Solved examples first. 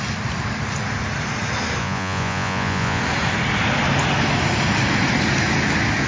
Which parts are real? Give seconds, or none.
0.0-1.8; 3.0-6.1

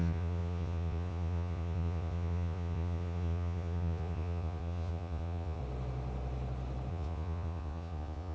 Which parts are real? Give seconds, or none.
5.6-6.9

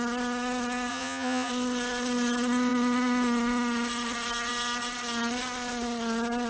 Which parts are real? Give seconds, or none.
0.0-0.9; 1.5-6.5

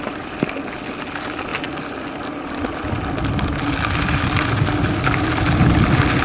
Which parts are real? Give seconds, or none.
0.0-6.2

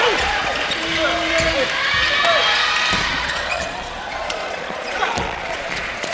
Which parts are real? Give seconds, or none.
0.4-3.1

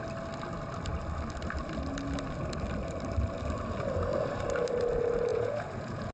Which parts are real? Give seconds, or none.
0.0-5.3